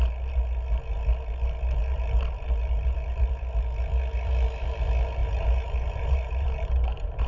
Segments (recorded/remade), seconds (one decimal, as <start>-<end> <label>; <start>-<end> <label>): 0.0-5.2 recorded; 5.2-7.3 remade